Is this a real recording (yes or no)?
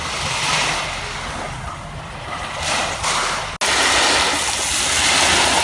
yes